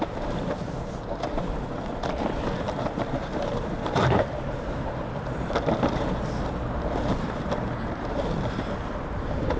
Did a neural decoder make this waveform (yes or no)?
yes